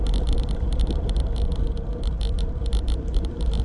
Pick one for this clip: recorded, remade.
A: recorded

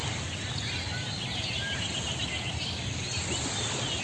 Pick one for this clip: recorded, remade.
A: recorded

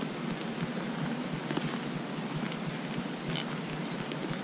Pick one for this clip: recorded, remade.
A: recorded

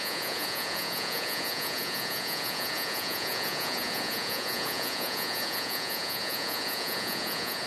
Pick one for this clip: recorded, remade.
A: remade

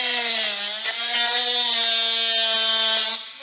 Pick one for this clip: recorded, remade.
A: recorded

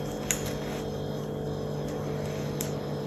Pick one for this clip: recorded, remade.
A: recorded